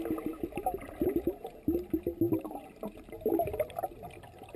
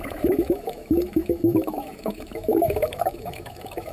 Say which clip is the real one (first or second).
first